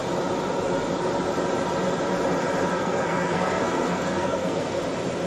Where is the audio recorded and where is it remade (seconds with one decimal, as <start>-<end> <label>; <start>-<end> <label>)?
0.0-2.7 recorded; 2.7-4.8 remade; 4.8-5.3 recorded